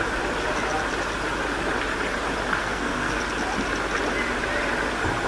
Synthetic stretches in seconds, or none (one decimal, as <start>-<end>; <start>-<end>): 2.6-3.2